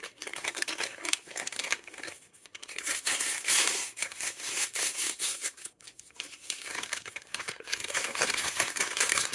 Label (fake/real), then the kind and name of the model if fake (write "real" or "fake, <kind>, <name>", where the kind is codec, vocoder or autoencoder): fake, codec, SNAC